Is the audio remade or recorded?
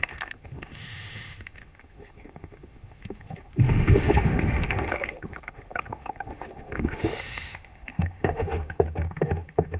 remade